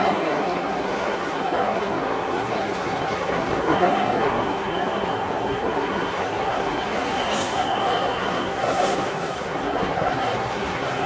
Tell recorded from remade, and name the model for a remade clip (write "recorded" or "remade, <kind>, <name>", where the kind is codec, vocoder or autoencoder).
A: remade, codec, SNAC